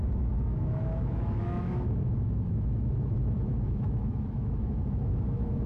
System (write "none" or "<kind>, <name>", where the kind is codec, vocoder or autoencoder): autoencoder, DAC-VAE